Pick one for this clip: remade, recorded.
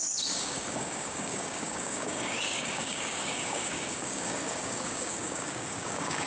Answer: remade